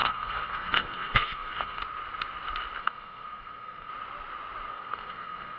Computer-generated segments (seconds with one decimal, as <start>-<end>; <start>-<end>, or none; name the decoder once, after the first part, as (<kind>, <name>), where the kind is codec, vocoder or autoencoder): 0.0-1.8 (codec, SNAC); 2.8-3.9; 4.7-5.6